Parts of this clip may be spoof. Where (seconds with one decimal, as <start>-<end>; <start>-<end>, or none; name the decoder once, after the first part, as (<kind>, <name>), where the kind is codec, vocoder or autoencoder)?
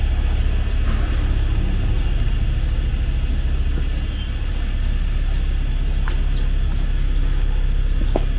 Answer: none